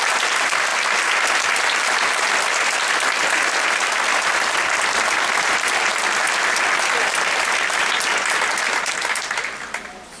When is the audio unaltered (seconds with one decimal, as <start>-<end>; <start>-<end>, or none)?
0.0-10.2